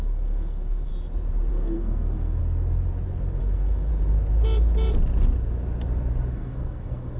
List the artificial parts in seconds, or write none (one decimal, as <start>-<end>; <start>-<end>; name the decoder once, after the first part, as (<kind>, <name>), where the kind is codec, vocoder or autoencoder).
0.0-0.9 (codec, SNAC); 1.5-2.4; 3.4-3.9; 6.3-7.2